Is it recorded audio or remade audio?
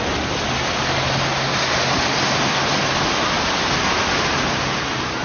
recorded